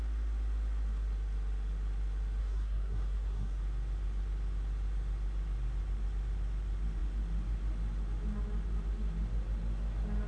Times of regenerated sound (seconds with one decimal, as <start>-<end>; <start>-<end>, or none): 2.4-3.6